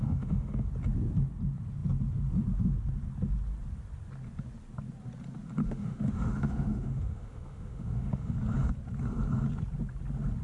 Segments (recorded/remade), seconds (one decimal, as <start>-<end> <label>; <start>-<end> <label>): 0.0-0.7 remade; 0.7-5.6 recorded; 5.6-8.3 remade; 8.3-10.4 recorded